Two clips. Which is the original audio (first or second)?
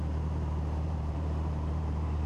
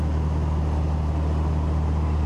second